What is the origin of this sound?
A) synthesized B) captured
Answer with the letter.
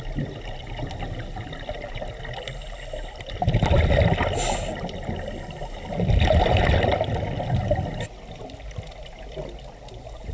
B